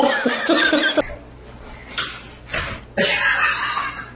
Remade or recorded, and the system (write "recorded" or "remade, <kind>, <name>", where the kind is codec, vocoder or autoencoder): recorded